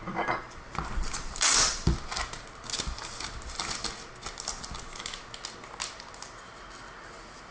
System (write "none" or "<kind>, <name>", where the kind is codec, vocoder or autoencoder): none